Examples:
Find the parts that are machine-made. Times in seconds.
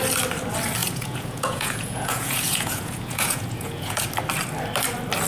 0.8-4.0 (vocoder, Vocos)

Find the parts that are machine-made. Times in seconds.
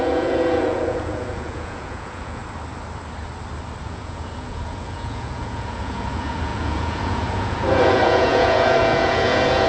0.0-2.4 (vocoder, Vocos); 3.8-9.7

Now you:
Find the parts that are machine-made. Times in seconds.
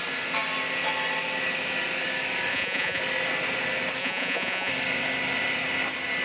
2.5-3.0 (vocoder, Vocos); 4.0-4.7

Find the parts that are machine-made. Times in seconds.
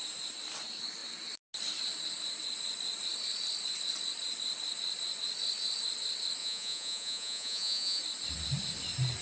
6.4-8.0 (vocoder, Vocos)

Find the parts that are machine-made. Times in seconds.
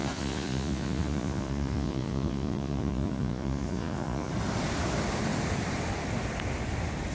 0.0-4.3 (vocoder, Vocos)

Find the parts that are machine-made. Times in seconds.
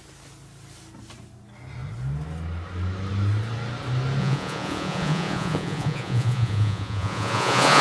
4.2-7.8 (vocoder, Vocos)